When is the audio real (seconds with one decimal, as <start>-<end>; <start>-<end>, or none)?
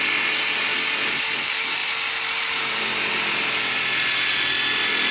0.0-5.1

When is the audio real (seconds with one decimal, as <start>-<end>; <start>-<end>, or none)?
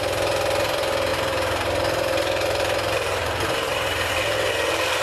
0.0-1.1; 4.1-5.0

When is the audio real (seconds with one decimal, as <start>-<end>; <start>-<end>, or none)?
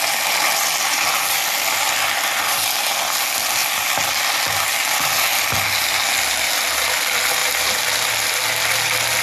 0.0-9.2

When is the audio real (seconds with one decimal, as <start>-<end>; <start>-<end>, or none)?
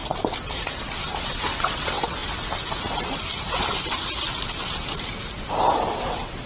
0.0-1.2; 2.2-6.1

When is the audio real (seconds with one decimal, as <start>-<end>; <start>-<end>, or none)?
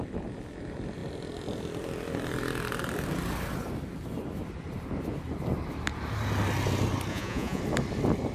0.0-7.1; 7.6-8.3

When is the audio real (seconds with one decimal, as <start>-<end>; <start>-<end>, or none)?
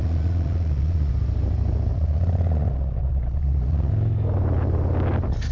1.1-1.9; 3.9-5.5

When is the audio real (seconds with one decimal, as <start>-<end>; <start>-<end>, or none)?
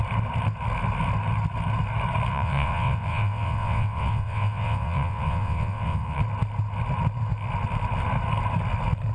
0.0-2.3; 6.2-9.1